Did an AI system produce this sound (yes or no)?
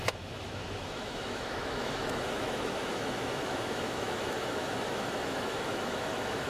yes